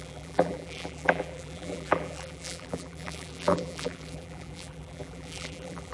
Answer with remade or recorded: remade